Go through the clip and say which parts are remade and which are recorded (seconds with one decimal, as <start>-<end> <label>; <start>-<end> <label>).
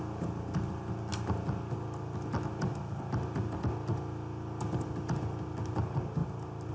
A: 0.0-6.7 recorded